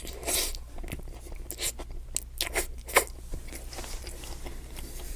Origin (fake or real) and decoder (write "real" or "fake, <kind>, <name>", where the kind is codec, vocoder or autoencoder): real